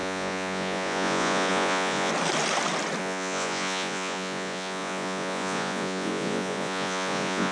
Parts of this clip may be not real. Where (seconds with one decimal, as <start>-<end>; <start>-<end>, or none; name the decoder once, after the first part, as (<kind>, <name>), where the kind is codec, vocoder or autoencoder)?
0.0-2.1 (vocoder, Vocos); 3.0-7.5